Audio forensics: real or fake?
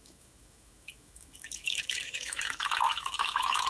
fake